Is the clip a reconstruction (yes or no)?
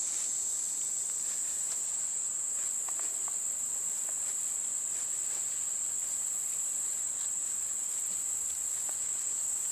no